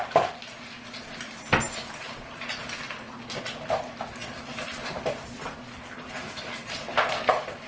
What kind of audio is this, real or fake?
real